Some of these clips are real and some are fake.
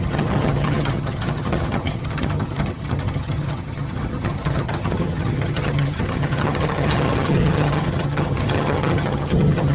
fake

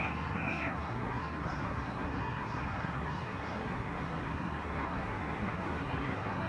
fake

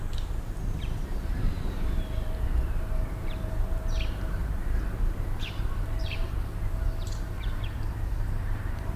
fake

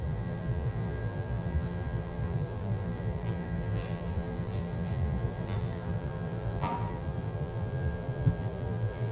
fake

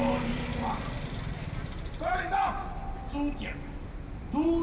real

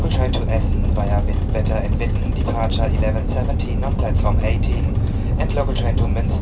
real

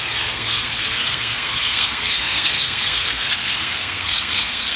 fake